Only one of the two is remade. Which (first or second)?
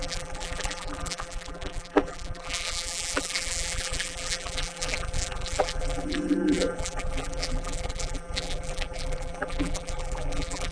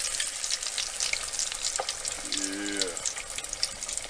first